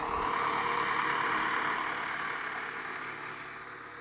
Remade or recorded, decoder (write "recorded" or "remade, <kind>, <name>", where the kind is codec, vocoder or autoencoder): recorded